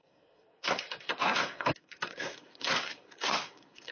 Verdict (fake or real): fake